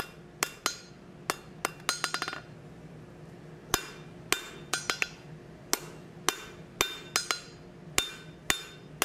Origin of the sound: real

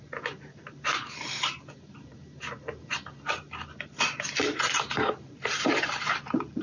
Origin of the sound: fake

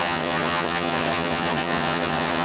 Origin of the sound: fake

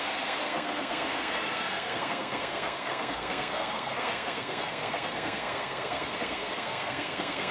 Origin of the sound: fake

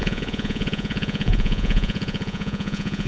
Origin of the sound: fake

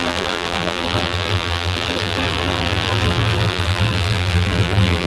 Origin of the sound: fake